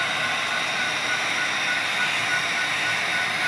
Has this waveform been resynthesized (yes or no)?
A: no